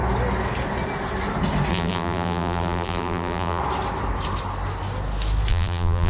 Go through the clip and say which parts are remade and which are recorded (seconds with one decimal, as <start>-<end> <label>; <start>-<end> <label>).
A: 0.0-1.7 recorded; 1.7-3.6 remade; 3.6-5.5 recorded; 5.5-6.1 remade

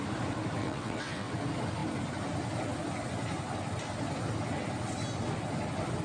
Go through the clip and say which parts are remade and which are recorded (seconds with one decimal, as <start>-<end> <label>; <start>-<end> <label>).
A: 0.0-0.6 recorded; 0.6-1.3 remade; 1.3-6.0 recorded

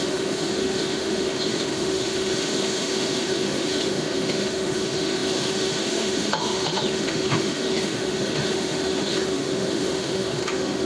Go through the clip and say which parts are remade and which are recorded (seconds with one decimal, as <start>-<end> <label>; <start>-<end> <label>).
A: 0.0-10.9 remade

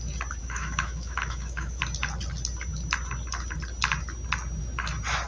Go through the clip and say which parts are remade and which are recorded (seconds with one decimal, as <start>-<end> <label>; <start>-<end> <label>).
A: 0.0-0.4 recorded; 0.4-1.8 remade; 1.8-5.3 recorded